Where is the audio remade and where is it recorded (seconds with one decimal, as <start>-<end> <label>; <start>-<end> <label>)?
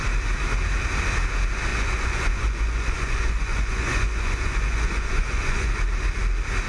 0.0-1.7 recorded; 1.7-5.7 remade; 5.7-6.7 recorded